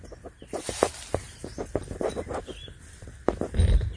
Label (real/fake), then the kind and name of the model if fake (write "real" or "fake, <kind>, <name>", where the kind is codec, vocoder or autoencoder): fake, vocoder, BigVGAN v2